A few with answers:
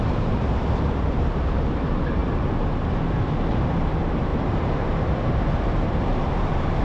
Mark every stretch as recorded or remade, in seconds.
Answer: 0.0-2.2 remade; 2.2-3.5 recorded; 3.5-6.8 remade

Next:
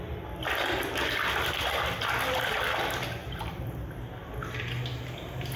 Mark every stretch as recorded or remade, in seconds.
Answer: 0.0-3.2 recorded; 3.2-4.3 remade; 4.3-5.6 recorded

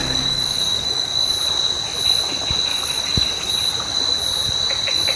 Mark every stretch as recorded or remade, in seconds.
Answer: 0.0-1.3 remade; 1.3-2.7 recorded; 2.7-3.5 remade; 3.5-5.2 recorded

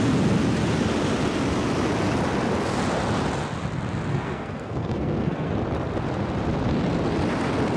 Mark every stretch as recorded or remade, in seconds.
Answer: 0.0-4.1 recorded; 4.1-5.5 remade; 5.5-7.8 recorded